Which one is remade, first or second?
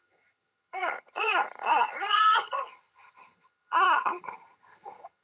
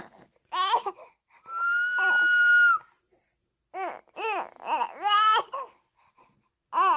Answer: first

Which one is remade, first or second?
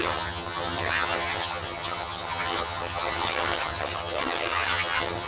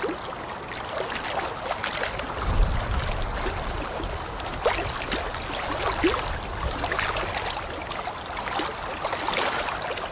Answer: first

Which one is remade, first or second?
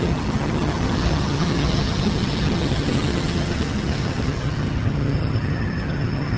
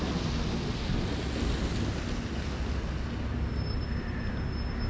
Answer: first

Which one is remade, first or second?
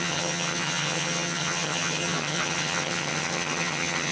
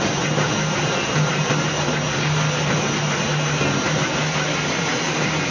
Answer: first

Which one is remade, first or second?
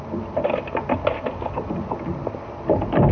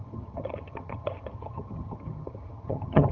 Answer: second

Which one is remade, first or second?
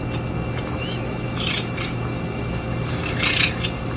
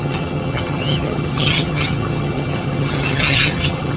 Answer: second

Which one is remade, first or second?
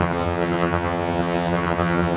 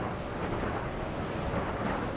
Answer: first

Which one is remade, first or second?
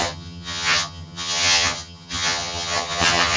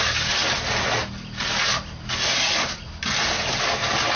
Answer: first